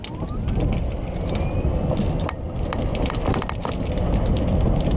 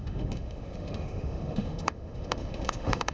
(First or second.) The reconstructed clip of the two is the second